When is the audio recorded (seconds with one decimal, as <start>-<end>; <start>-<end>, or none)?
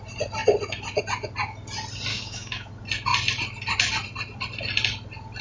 0.0-2.1; 2.7-5.4